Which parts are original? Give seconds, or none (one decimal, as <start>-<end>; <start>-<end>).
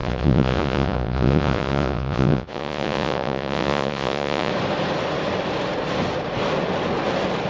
4.5-7.5